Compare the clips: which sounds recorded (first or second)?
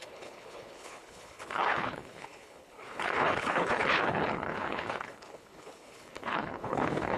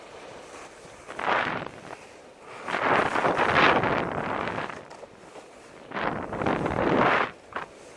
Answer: second